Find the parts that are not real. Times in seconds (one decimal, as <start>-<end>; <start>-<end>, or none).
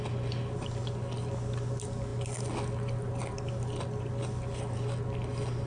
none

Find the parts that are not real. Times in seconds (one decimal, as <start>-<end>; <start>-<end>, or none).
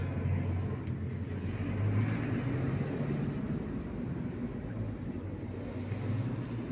none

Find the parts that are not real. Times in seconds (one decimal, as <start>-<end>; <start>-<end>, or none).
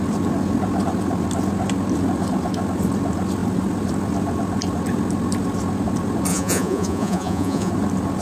6.3-7.7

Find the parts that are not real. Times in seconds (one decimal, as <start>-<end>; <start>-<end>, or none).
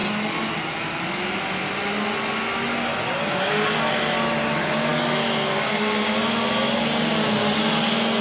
none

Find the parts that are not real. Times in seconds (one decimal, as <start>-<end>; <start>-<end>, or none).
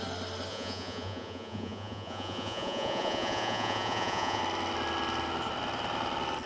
0.5-4.4